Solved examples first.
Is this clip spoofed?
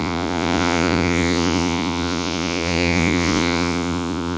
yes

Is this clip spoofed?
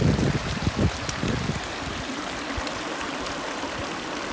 no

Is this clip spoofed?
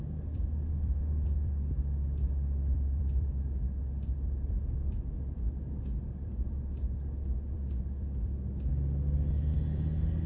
no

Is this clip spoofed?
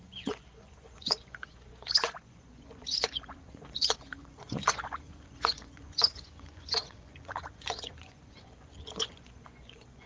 yes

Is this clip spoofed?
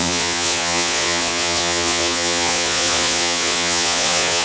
yes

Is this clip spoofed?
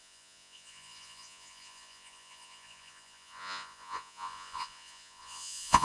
yes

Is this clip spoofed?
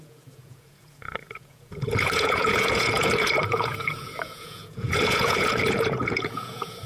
yes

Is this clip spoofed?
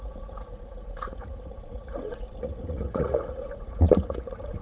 yes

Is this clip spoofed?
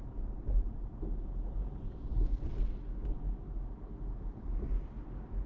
no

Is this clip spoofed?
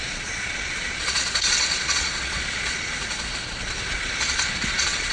yes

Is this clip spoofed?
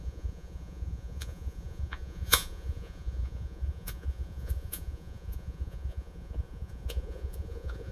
yes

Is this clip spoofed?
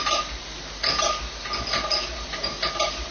no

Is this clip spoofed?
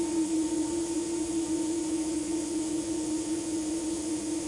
yes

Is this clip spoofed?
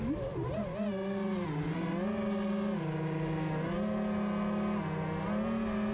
no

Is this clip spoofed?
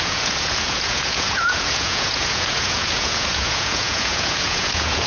yes